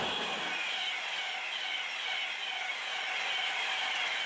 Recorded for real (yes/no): yes